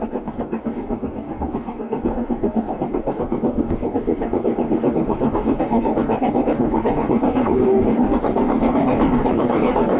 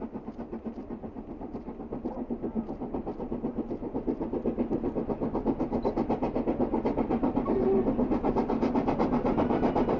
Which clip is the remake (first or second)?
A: first